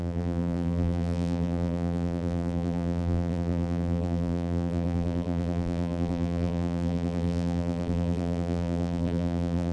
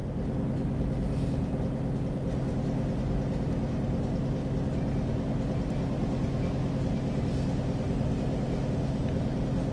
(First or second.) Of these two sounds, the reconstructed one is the first